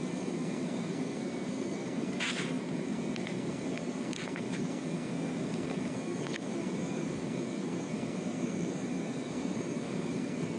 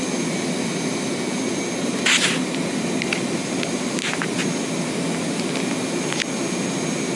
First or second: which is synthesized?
first